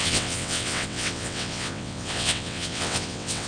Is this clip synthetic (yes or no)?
yes